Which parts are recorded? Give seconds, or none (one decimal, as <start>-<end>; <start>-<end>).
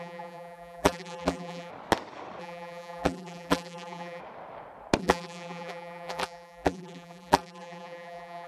1.7-2.4; 4.2-5.0